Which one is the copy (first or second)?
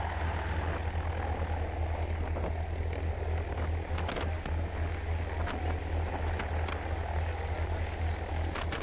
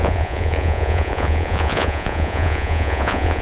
second